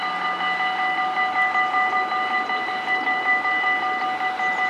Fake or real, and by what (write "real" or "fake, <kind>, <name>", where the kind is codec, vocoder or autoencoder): real